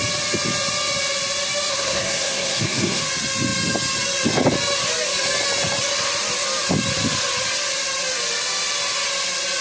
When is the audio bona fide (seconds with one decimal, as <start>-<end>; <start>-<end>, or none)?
0.0-1.7; 3.0-9.6